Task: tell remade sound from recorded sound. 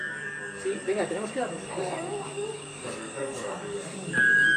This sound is remade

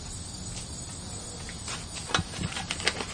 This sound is recorded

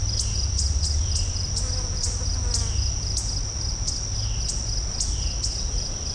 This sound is recorded